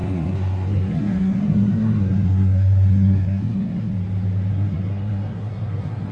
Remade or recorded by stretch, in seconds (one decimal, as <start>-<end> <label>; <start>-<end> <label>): 0.0-3.9 remade; 3.9-4.5 recorded; 4.5-6.1 remade